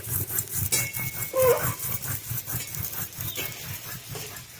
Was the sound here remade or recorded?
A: recorded